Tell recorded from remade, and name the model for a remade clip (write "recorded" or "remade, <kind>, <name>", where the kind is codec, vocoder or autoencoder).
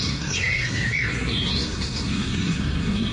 remade, codec, SNAC